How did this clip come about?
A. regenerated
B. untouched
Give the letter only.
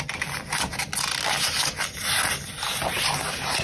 B